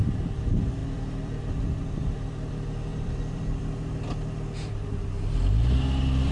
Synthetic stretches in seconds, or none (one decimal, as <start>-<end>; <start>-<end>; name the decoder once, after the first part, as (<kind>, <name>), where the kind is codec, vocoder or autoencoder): 0.8-2.5 (vocoder, BigVGAN v2); 2.9-3.6